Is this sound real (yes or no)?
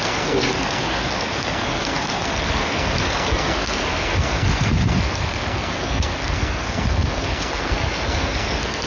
no